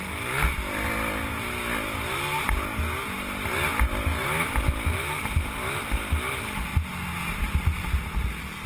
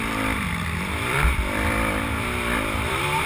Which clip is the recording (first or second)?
first